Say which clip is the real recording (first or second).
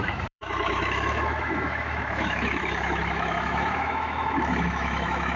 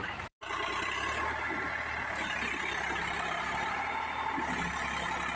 second